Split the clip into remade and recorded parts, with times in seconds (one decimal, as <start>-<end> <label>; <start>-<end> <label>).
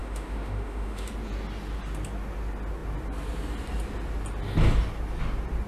0.0-1.1 remade; 1.1-5.7 recorded